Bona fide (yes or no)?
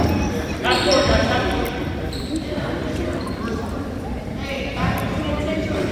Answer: no